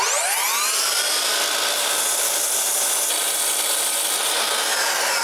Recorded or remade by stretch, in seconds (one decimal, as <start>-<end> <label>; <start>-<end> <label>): 0.0-5.2 recorded